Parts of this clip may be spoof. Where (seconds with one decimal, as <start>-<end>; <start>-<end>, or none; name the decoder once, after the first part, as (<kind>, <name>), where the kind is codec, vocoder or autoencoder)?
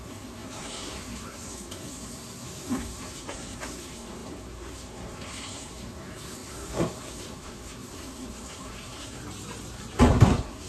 0.0-9.2 (codec, SNAC); 10.1-10.7